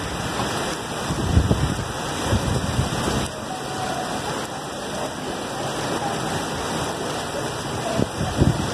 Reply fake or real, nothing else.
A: real